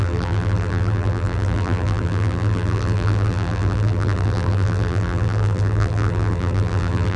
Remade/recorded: remade